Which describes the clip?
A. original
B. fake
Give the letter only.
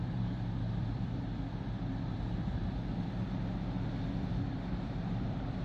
B